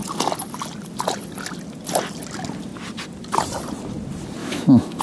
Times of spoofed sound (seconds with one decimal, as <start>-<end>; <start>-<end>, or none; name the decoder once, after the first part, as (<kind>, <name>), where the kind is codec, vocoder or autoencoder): 4.4-5.0 (autoencoder, DAC-VAE)